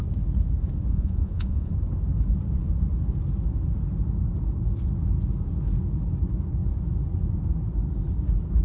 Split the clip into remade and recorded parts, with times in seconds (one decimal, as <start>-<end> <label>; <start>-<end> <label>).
0.0-0.9 recorded; 0.9-1.7 remade; 1.7-8.6 recorded